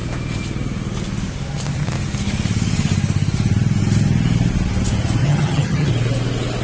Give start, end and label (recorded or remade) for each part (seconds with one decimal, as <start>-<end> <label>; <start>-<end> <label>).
0.0-5.2 recorded; 5.2-5.9 remade; 5.9-6.6 recorded